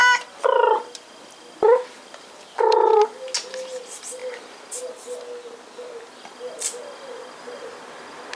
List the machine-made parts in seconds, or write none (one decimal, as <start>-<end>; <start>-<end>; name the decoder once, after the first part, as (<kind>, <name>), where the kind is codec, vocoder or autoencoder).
none